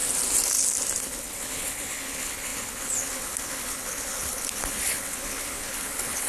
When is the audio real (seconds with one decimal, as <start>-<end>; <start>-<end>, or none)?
0.0-1.0

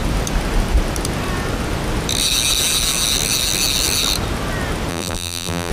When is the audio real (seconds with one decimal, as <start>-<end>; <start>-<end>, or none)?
0.0-4.9

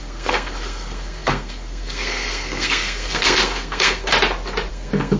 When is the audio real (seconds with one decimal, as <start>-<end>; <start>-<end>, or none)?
4.1-4.7

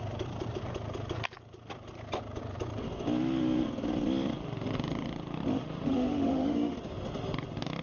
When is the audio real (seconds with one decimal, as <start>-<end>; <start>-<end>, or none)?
0.0-5.6; 6.8-7.8

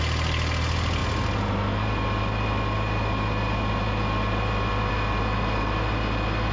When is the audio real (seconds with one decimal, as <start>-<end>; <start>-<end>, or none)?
0.0-6.5

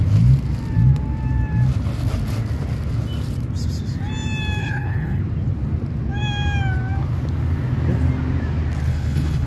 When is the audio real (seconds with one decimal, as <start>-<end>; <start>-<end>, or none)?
0.0-4.6; 5.2-8.9

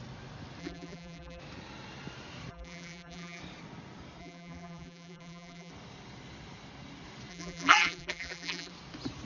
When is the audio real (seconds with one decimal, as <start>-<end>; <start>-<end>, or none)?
0.0-0.6; 1.4-2.5; 3.4-4.2; 5.7-7.3; 8.7-9.2

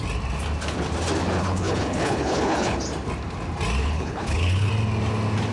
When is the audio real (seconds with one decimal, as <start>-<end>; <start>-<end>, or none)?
0.0-1.4; 2.8-3.8; 4.7-5.5